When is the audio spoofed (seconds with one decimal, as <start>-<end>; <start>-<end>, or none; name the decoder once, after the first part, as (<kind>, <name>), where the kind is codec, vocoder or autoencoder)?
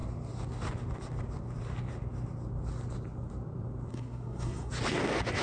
3.9-4.7 (codec, SNAC)